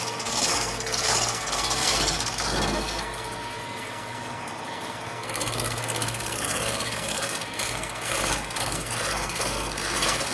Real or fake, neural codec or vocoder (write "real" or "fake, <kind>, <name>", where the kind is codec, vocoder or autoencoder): fake, codec, SNAC